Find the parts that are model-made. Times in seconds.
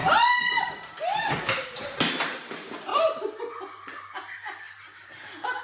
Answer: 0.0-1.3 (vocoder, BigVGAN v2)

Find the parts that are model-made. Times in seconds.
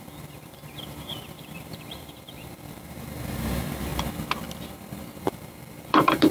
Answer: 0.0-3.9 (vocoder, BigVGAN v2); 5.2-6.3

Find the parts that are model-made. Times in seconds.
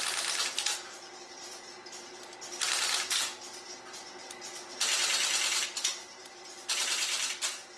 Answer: none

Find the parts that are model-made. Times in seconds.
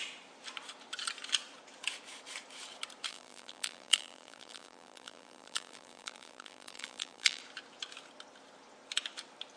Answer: 3.1-7.4 (vocoder, BigVGAN v2)